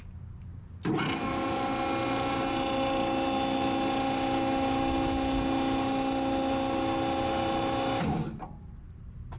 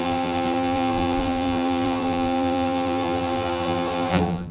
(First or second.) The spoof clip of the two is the second